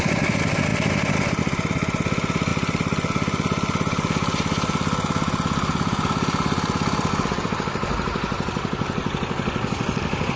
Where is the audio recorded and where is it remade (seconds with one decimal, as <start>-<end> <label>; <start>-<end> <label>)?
0.0-10.4 recorded